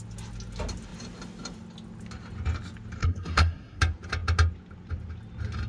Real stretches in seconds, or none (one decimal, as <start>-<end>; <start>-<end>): 0.0-3.0; 3.8-5.7